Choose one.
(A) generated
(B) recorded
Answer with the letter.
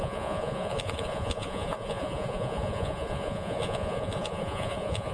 A